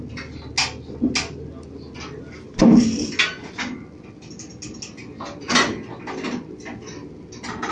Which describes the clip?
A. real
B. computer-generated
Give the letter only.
A